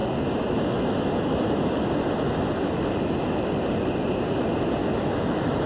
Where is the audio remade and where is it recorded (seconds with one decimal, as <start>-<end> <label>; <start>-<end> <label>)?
0.0-3.4 remade; 3.4-4.8 recorded; 4.8-5.7 remade